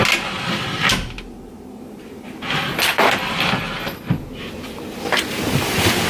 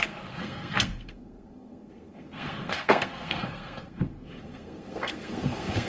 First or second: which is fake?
second